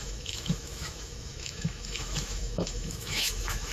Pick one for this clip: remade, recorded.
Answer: remade